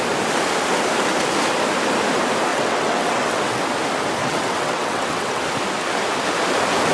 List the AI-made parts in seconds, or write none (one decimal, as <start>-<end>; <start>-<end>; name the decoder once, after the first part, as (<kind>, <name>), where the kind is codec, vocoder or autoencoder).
2.5-3.6 (vocoder, WaveNeXt); 4.2-5.4